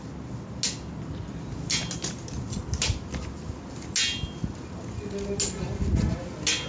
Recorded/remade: recorded